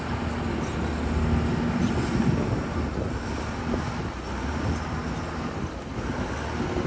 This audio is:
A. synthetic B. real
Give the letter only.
B